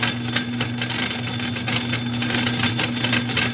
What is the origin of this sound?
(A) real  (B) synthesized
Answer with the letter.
A